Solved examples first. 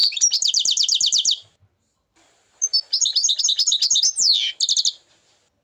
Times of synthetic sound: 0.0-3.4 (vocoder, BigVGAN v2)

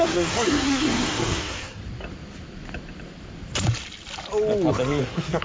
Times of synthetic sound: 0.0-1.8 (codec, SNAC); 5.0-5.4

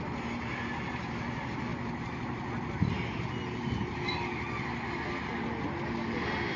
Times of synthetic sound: none

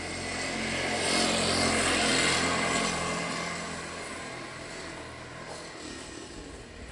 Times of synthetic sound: none

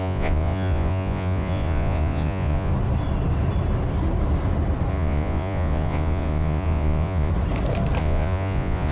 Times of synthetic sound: 0.0-2.7 (vocoder, Vocos); 4.9-7.3; 8.0-8.9